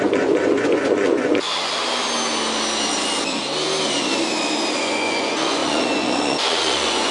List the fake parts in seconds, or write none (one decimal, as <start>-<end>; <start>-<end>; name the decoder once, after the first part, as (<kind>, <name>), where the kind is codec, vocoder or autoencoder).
0.0-1.8 (vocoder, Vocos); 4.8-7.1